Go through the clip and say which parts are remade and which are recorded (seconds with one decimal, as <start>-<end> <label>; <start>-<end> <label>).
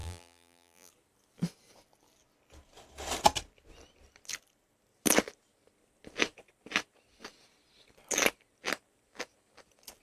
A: 0.0-0.9 remade; 0.9-10.0 recorded